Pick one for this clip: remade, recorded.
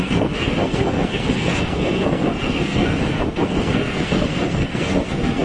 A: remade